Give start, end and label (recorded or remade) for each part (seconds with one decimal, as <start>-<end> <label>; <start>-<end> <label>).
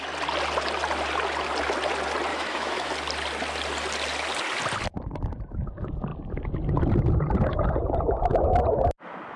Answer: 0.0-2.3 recorded; 2.3-2.9 remade; 2.9-9.4 recorded